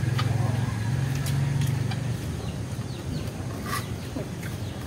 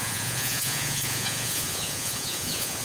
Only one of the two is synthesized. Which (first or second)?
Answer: second